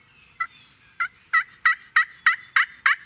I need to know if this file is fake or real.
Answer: real